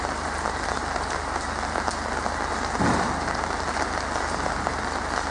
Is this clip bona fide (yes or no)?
yes